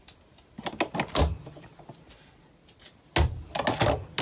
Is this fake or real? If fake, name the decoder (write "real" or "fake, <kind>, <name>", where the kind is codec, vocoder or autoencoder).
real